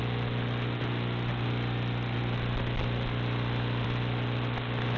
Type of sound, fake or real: real